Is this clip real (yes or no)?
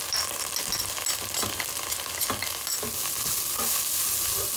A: yes